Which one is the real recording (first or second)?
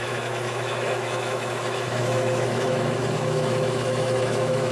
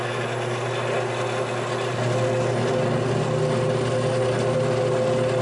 second